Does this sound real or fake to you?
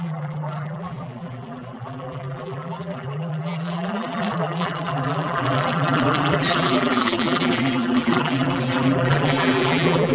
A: fake